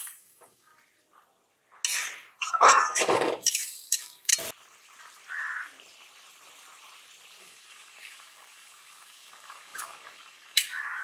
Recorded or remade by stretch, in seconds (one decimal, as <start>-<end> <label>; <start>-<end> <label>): 0.0-0.7 remade; 0.7-2.5 recorded; 2.5-4.3 remade; 4.3-7.4 recorded; 7.4-11.0 remade